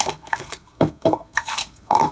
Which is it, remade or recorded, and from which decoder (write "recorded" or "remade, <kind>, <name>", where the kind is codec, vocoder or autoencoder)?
remade, codec, SNAC